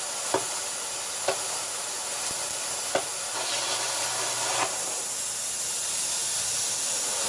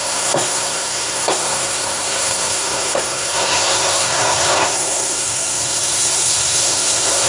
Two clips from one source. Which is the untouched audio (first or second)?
first